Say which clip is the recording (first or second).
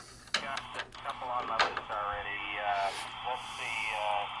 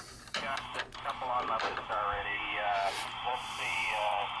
first